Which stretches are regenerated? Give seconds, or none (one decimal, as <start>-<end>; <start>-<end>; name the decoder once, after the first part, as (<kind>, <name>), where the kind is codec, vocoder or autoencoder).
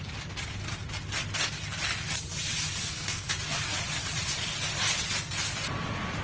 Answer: 2.8-3.3 (codec, SNAC)